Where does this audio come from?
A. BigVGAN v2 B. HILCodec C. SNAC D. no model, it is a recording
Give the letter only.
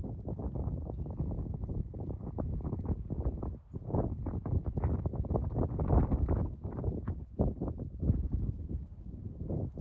D